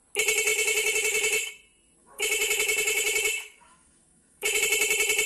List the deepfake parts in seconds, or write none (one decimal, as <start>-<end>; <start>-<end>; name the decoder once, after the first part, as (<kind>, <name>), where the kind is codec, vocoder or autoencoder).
0.5-1.5 (autoencoder, DAC-VAE); 2.0-4.6